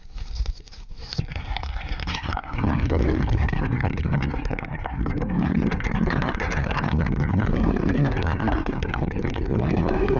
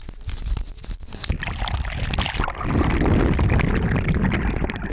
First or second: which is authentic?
second